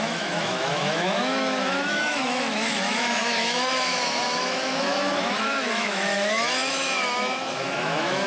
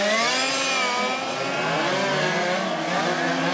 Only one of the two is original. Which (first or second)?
second